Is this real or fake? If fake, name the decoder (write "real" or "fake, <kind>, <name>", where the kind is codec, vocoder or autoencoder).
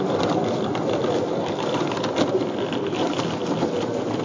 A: real